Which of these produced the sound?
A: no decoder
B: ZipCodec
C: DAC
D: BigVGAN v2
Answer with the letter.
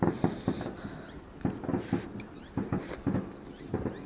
A